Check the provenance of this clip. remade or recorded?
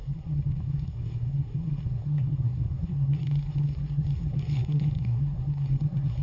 remade